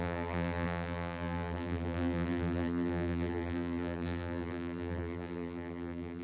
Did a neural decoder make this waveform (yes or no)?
yes